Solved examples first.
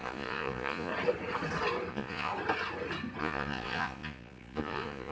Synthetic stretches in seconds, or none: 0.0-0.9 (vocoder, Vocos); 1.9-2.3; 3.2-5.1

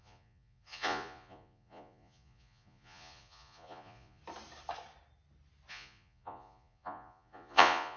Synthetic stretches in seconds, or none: 0.0-4.2 (vocoder, Vocos); 5.7-8.0

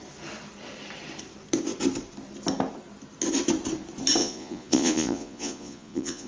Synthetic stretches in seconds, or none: 4.2-6.3 (vocoder, Vocos)

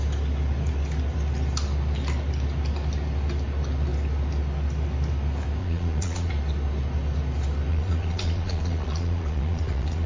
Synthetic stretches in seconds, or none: 5.6-6.3 (vocoder, Vocos); 7.7-10.1

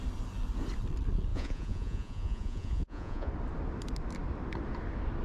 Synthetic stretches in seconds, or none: 1.3-3.3 (vocoder, Vocos)